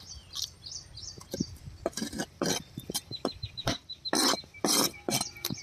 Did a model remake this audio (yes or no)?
yes